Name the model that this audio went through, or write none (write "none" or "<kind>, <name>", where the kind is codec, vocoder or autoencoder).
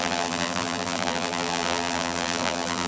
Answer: vocoder, BigVGAN v2